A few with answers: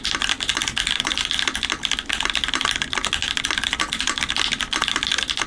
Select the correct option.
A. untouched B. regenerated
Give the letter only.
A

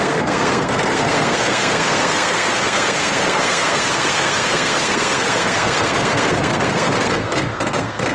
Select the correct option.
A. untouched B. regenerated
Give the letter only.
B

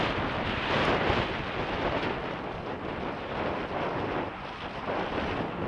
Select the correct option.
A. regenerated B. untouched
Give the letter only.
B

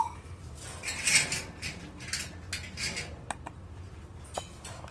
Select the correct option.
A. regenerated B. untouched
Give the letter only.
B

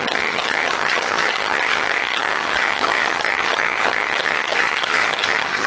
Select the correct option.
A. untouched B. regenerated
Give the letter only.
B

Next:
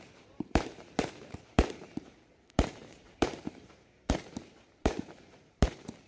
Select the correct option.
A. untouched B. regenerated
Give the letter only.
B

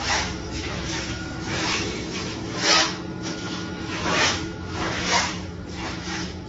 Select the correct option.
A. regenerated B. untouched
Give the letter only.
A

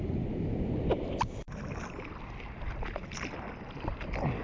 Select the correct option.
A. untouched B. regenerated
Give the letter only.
A